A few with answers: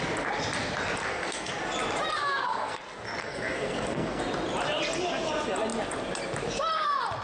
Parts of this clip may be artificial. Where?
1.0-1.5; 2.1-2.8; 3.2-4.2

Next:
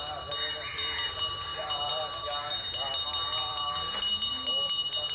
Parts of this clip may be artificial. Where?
none

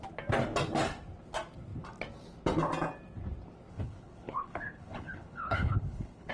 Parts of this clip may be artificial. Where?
3.7-6.3

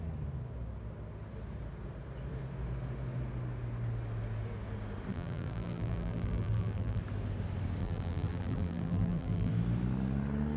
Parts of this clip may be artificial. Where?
5.1-7.0; 7.8-9.5

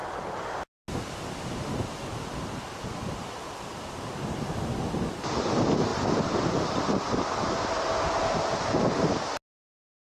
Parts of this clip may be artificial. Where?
none

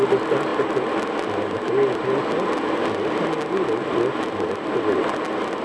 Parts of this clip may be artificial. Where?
none